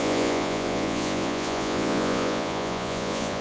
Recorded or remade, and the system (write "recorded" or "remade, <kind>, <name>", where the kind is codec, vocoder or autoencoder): remade, vocoder, Vocos